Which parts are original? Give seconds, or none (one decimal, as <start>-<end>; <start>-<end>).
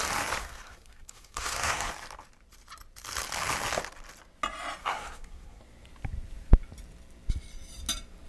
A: 0.0-0.4; 1.9-4.8; 5.6-8.3